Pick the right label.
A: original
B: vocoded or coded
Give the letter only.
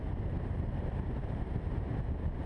B